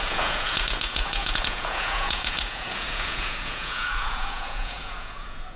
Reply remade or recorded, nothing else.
remade